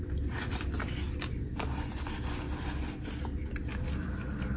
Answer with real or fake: real